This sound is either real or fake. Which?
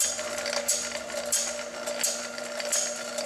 real